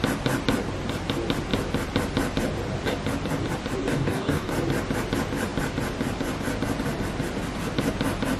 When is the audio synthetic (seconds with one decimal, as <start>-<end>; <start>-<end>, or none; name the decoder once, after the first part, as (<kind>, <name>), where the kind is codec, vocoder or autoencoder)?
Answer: 3.8-4.5 (codec, DAC)